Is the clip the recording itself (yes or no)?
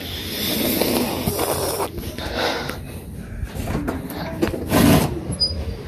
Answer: yes